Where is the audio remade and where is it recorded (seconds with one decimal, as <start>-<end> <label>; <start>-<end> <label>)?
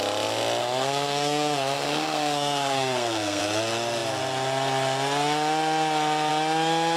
0.0-0.6 recorded; 0.6-3.4 remade; 3.4-7.0 recorded